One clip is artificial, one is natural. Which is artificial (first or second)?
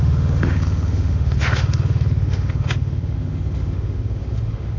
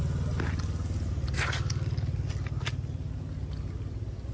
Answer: first